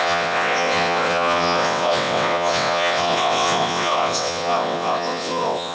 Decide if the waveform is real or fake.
fake